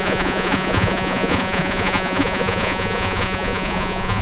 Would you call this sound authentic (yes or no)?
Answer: no